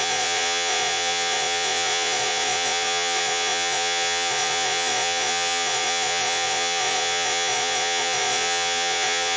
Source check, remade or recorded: remade